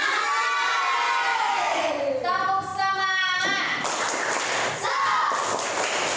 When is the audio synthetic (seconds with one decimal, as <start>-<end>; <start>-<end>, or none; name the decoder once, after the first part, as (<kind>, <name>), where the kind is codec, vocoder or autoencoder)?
1.3-1.9 (autoencoder, DAC-VAE)